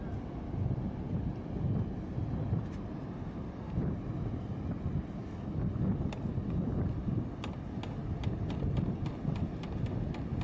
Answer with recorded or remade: recorded